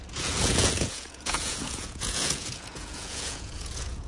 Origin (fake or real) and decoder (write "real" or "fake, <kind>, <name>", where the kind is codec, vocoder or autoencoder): fake, vocoder, Vocos